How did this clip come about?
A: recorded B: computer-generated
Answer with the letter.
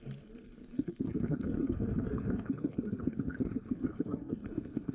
B